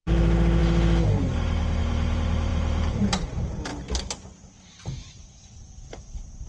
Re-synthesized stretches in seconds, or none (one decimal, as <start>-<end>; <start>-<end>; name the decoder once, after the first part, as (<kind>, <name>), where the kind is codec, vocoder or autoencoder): 0.0-3.7 (vocoder, BigVGAN v2); 5.1-6.5